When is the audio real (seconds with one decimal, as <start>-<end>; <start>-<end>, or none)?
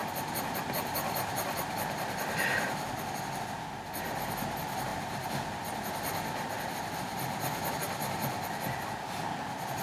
3.8-4.9; 7.7-9.8